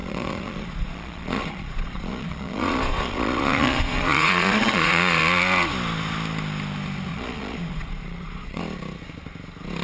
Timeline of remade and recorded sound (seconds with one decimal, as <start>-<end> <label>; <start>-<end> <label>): 0.0-5.2 remade; 5.2-7.1 recorded; 7.1-8.6 remade; 8.6-9.8 recorded

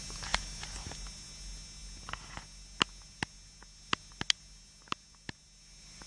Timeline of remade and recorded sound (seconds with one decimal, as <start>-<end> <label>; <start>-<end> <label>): 0.0-6.1 recorded

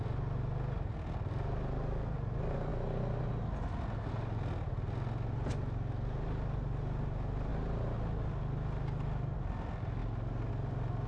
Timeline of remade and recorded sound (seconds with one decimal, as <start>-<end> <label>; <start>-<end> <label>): 0.0-11.1 recorded